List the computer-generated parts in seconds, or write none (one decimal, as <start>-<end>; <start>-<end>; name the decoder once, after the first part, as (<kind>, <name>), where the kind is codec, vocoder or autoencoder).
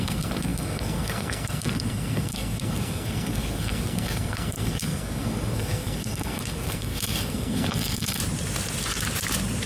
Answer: 0.0-8.2 (codec, SNAC)